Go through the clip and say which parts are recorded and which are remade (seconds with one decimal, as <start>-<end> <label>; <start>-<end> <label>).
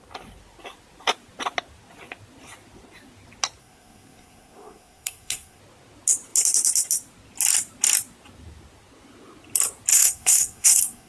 0.0-3.6 recorded; 3.6-5.6 remade; 5.6-9.9 recorded; 9.9-11.1 remade